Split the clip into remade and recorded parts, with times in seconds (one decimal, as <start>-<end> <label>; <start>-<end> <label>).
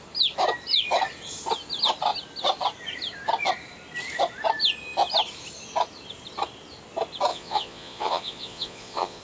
0.0-7.3 recorded; 7.3-9.2 remade